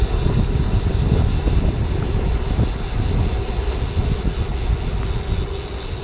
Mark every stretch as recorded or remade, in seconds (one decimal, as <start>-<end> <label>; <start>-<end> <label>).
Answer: 0.0-6.0 recorded

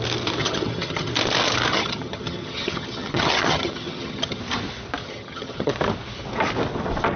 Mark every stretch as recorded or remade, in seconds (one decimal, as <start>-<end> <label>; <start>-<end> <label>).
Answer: 0.0-0.4 recorded; 0.4-1.1 remade; 1.1-1.7 recorded; 1.7-4.4 remade; 4.4-5.0 recorded; 5.0-5.7 remade; 5.7-7.2 recorded